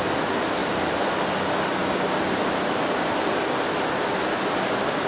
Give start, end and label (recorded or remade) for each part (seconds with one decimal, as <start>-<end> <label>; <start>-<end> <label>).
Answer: 0.0-5.1 recorded